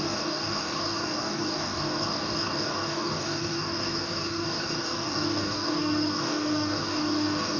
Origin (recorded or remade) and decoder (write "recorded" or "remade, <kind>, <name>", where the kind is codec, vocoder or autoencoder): remade, codec, DAC